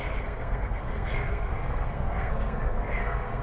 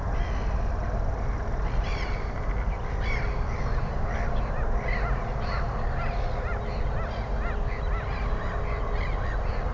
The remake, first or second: first